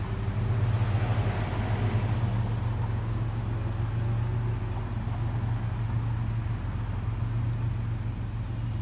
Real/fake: real